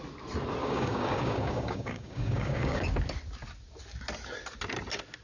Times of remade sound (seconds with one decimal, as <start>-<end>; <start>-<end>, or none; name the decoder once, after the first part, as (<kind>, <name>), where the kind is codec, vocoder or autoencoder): 0.6-2.9 (codec, DAC)